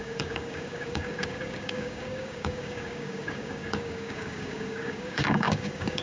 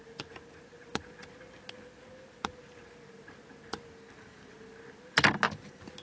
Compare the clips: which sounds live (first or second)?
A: second